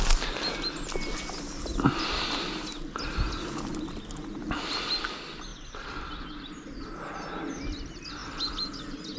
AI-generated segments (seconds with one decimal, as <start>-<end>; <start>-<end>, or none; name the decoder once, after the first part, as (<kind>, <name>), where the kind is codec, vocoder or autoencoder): none